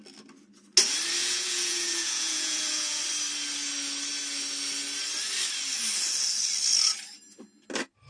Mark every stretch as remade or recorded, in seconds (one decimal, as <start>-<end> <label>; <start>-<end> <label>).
0.0-1.2 recorded; 1.2-3.0 remade; 3.0-8.1 recorded